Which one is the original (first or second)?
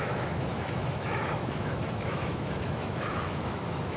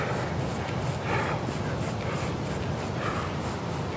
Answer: second